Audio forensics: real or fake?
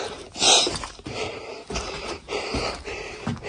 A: fake